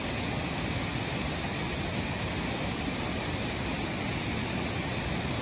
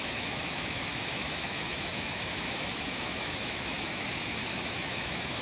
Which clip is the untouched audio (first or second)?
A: first